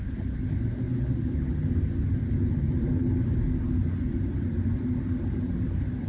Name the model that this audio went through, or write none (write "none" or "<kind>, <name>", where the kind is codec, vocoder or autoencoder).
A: none